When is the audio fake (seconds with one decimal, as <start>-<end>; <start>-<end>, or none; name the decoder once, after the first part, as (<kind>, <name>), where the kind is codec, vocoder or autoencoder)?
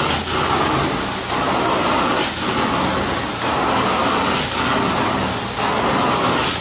none